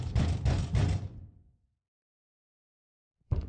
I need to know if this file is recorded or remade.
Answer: remade